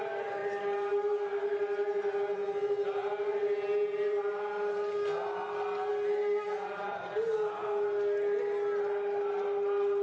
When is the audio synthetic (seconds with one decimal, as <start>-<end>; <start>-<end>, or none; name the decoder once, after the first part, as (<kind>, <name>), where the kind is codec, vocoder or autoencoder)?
none